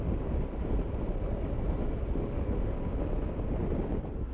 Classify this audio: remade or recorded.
recorded